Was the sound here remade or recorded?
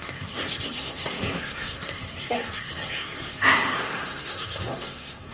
remade